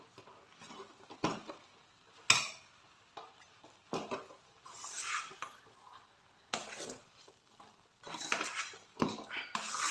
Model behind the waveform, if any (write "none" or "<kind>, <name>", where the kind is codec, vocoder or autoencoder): none